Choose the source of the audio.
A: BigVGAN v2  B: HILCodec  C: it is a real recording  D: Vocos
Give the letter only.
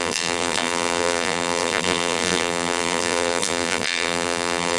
A